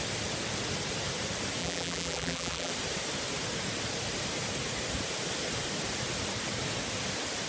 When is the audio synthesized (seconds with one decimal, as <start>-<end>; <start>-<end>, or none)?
1.6-2.7